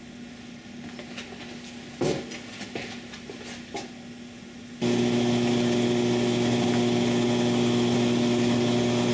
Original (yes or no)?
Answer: yes